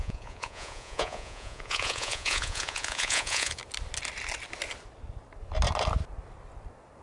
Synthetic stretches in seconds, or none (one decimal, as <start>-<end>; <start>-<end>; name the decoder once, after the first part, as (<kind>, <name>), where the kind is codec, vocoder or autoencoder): 0.0-3.6 (vocoder, Vocos)